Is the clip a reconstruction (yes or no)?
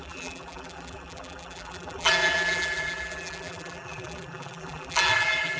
yes